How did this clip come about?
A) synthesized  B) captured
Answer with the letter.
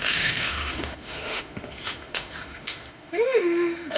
A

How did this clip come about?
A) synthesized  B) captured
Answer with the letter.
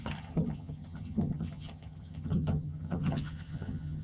A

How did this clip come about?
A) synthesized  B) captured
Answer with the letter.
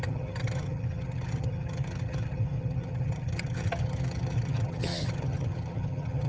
A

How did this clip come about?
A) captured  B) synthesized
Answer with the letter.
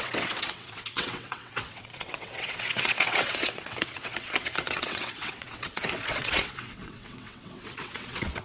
B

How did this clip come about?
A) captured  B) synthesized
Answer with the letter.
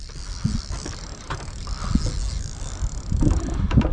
A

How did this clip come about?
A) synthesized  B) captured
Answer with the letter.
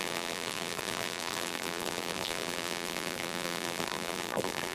A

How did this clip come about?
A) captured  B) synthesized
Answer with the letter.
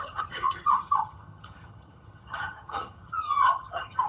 B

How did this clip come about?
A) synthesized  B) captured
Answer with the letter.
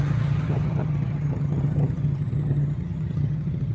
A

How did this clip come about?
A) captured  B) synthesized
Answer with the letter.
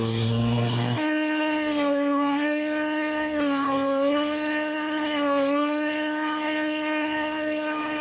B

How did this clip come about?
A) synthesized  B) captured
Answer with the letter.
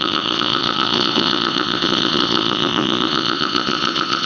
A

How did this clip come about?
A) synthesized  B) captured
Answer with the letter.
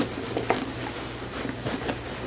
B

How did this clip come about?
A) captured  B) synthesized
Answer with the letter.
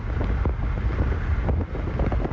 A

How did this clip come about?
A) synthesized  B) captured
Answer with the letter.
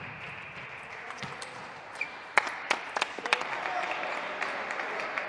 A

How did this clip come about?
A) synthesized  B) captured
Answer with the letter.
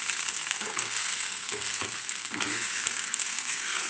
A